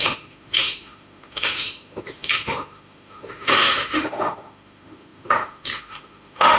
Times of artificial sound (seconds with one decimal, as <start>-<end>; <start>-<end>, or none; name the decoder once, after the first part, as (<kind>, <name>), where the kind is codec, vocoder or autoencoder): 0.0-6.6 (autoencoder, DAC-VAE)